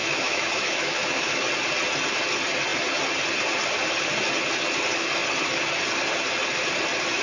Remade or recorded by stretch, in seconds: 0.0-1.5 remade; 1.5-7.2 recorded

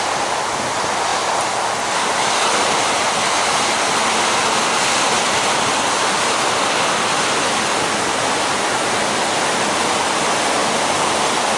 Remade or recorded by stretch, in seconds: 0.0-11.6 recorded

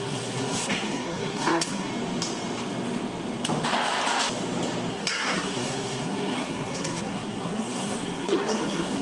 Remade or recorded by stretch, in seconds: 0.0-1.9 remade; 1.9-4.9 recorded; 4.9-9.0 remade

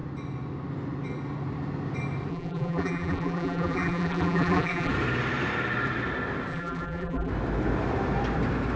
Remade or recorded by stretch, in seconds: 0.0-2.3 recorded; 2.3-4.9 remade; 4.9-6.5 recorded; 6.5-7.3 remade; 7.3-8.8 recorded